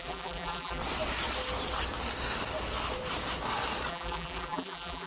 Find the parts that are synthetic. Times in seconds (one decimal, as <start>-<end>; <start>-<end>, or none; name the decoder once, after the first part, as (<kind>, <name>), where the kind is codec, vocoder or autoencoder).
0.0-0.8 (vocoder, BigVGAN v2); 3.9-5.1